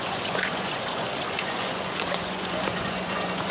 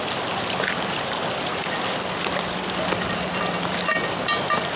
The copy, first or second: first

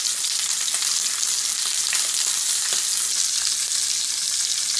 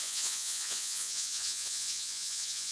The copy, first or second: second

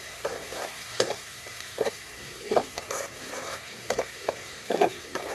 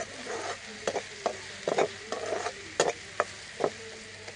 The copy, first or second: first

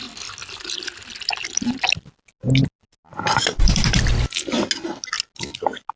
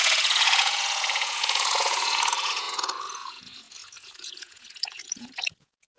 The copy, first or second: second